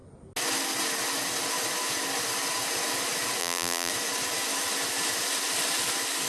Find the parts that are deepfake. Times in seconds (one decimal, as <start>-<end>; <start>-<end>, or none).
3.4-3.9